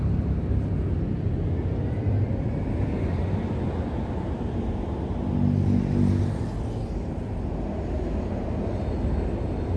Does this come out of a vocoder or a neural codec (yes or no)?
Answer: no